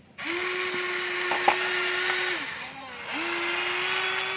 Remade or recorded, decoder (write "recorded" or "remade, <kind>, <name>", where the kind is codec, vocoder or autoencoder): recorded